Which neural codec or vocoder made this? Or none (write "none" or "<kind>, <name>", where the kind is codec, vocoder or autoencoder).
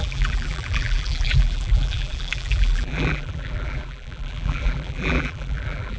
vocoder, BigVGAN v2